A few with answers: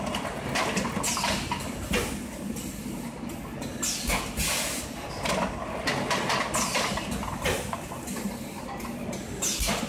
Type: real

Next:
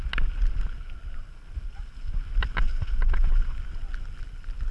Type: real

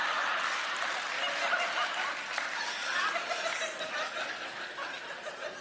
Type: real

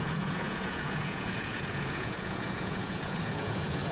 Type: fake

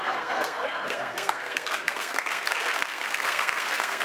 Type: fake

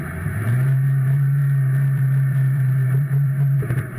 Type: fake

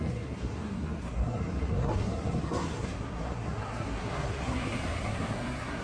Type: fake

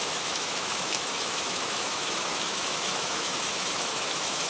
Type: fake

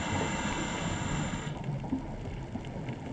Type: real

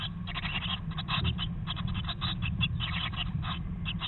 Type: real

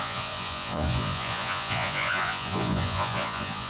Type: fake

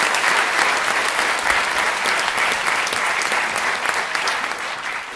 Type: real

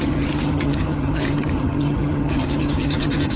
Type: fake